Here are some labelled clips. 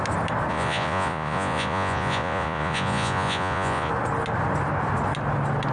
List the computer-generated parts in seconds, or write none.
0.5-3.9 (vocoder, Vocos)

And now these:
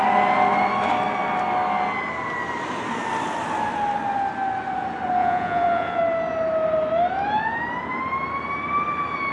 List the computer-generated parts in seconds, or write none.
5.2-6.0 (vocoder, Vocos)

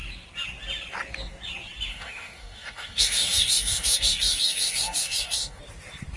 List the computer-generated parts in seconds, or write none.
1.9-5.6 (codec, DAC)

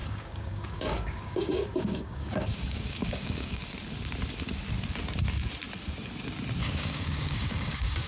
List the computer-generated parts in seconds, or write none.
0.0-3.6 (codec, DAC); 6.6-8.1

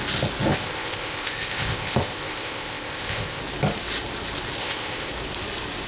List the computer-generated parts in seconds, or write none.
0.5-3.4 (codec, ZipCodec); 4.6-5.1

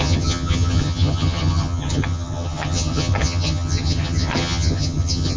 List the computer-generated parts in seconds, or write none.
0.0-5.4 (vocoder, HiFi-GAN)

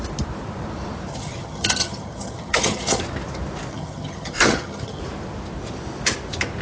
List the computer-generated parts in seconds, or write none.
1.1-3.0 (vocoder, HiFi-GAN); 3.7-5.0

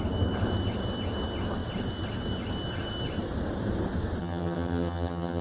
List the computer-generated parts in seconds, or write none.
4.2-5.4 (vocoder, HiFi-GAN)